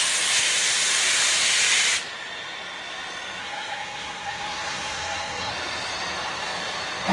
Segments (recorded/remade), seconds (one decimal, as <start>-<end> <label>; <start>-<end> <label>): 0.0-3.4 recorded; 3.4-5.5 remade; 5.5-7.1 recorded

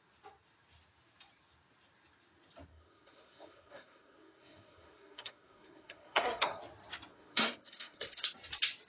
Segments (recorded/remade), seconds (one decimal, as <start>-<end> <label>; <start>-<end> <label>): 0.0-2.7 recorded; 2.7-6.6 remade; 6.6-7.1 recorded; 7.1-8.3 remade; 8.3-8.9 recorded

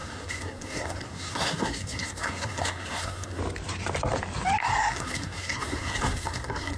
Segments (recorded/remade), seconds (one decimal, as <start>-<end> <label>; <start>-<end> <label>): 0.0-3.4 remade; 3.4-4.6 recorded; 4.6-6.8 remade

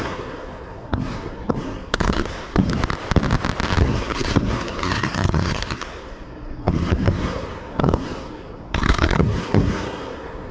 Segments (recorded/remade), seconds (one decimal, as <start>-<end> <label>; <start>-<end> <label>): 0.0-2.7 remade; 2.7-3.8 recorded; 3.8-10.5 remade

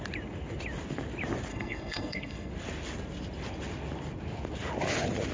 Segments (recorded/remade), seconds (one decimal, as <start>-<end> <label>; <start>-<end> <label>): 0.0-1.5 recorded; 1.5-2.5 remade; 2.5-5.3 recorded

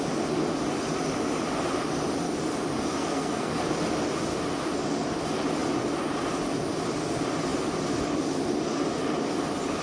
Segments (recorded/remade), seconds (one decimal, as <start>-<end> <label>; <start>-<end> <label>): 0.0-3.0 recorded; 3.0-3.5 remade; 3.5-9.8 recorded

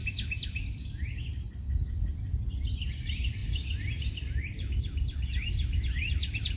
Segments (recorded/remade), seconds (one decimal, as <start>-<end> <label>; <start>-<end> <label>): 0.0-6.6 recorded

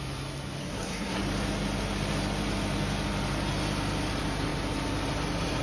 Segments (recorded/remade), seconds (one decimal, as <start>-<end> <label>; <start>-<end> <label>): 0.0-0.6 recorded; 0.6-1.2 remade; 1.2-5.6 recorded